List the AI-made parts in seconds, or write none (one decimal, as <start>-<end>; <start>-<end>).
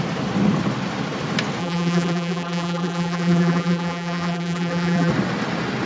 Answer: 1.6-5.1